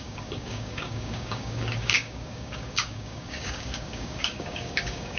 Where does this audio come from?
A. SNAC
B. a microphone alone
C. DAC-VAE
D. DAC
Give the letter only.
D